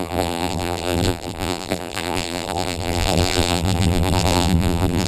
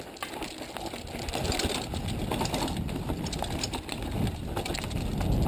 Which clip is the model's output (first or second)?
first